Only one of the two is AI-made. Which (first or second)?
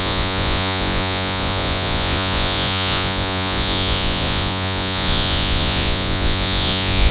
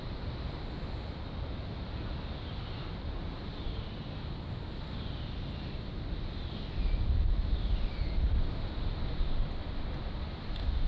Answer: first